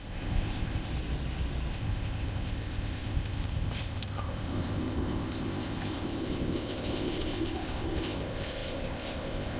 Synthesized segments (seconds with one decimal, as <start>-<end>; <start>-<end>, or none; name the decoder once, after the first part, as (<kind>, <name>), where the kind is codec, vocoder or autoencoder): 0.0-0.9 (codec, ZipCodec); 1.7-9.6